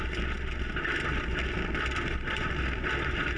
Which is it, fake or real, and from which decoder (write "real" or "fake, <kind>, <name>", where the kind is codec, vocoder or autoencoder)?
real